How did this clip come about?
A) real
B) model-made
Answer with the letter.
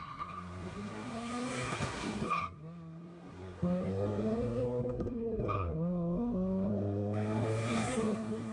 B